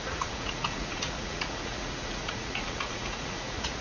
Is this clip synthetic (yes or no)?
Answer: yes